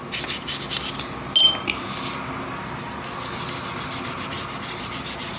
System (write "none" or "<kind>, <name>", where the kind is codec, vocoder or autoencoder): none